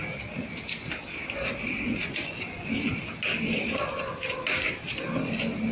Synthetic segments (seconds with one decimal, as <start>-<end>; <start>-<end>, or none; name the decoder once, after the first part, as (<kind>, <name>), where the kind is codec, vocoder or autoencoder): 2.0-2.7 (vocoder, Vocos)